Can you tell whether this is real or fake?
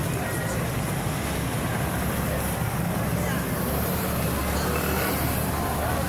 real